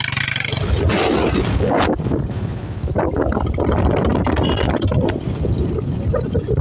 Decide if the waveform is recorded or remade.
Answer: recorded